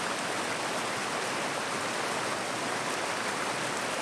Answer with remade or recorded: recorded